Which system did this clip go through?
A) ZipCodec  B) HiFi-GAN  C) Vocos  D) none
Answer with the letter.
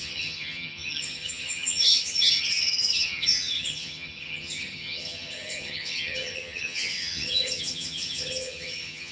B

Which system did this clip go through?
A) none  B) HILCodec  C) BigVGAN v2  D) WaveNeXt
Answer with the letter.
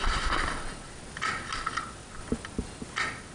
A